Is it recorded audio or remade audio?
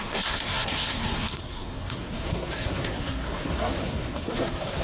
remade